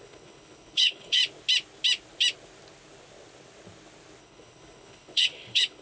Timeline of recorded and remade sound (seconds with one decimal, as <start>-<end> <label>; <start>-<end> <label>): 0.0-1.2 remade; 1.2-4.2 recorded; 4.2-5.8 remade